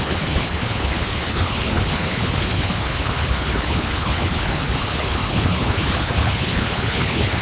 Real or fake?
fake